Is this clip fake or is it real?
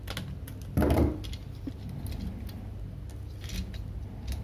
real